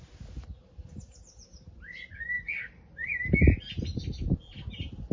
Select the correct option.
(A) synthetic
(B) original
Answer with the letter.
B